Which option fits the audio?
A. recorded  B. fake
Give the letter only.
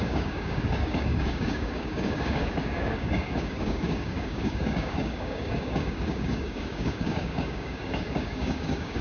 B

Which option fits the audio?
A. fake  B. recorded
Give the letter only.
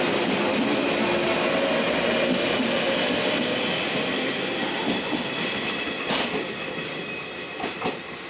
B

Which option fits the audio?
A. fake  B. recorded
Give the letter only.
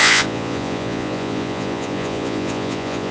A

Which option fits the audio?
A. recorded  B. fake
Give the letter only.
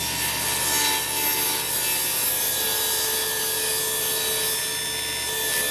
A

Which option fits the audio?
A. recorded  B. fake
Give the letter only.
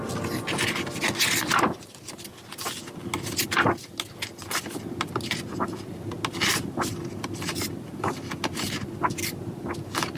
A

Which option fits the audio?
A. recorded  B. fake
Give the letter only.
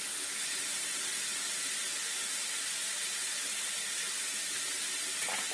A